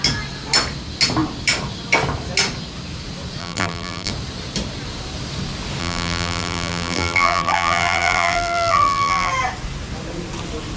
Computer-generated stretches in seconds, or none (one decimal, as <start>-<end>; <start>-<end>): 3.4-4.1; 5.8-9.3